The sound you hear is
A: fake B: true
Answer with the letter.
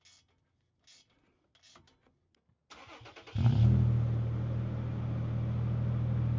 B